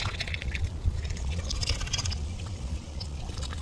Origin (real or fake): fake